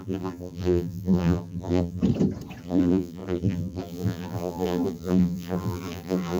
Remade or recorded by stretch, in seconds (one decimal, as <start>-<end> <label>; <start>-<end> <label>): 0.0-2.0 remade; 2.0-2.6 recorded; 2.6-6.4 remade